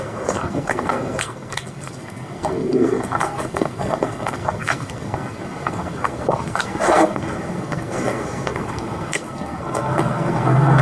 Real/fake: fake